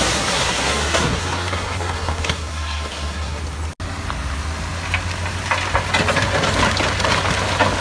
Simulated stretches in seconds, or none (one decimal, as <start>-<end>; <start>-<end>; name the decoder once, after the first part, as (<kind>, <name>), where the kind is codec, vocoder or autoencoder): 0.0-3.4 (codec, SNAC)